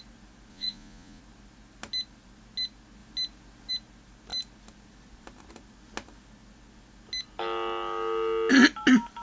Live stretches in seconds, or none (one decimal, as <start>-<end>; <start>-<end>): 0.0-0.5; 1.2-9.2